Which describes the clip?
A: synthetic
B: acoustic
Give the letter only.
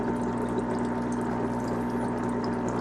B